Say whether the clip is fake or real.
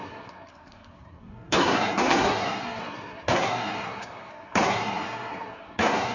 fake